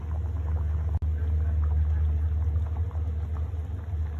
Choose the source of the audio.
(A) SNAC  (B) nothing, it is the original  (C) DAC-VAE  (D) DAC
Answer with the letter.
B